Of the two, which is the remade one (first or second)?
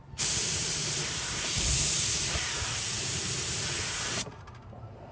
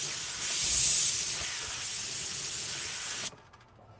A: first